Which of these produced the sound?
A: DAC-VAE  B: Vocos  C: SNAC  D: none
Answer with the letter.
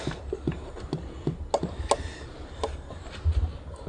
D